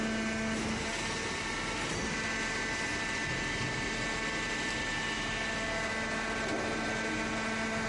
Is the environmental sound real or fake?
real